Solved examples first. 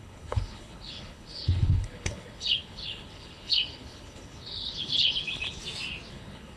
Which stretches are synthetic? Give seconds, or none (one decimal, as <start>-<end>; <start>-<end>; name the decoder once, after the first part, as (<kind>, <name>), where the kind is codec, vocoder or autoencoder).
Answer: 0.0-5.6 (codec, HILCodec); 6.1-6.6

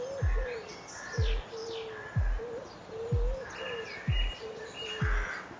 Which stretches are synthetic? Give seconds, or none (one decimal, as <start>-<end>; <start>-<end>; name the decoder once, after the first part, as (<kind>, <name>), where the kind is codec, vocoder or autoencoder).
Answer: none

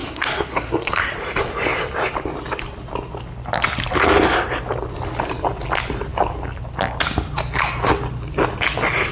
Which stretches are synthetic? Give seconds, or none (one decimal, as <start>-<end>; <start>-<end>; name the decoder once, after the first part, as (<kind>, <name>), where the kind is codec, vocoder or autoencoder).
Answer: 0.0-1.1 (codec, SNAC)

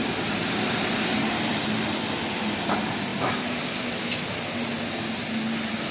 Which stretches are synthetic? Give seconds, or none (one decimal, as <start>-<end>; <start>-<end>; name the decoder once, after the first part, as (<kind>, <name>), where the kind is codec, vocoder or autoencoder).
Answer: 0.0-1.6 (vocoder, BigVGAN v2); 3.1-4.5

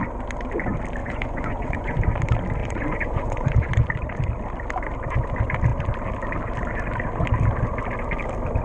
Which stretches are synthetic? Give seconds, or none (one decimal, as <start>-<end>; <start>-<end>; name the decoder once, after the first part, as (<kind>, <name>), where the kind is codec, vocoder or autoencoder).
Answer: 1.0-2.2 (vocoder, Vocos); 2.6-3.7